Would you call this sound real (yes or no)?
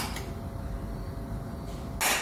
yes